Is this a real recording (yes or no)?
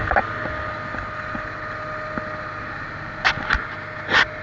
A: yes